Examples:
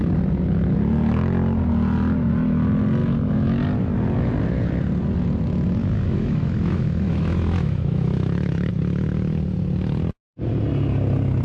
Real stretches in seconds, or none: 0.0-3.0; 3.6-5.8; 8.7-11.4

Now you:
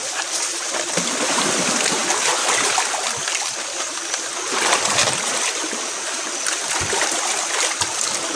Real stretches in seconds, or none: 0.0-8.4

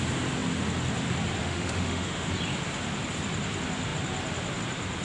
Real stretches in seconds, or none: 0.0-1.4; 2.3-5.0